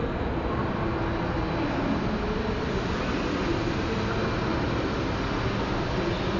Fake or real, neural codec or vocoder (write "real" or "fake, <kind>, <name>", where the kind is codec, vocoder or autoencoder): real